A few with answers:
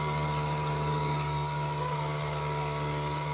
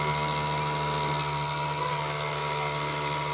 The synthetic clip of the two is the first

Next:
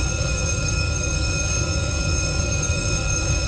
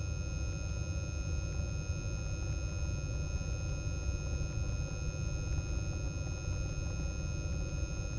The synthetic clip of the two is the first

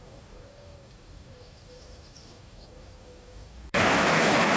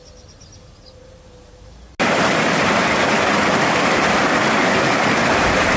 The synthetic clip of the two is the first